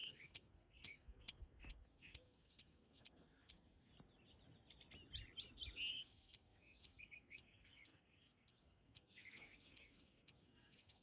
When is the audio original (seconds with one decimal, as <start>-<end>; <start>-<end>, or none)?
3.9-5.9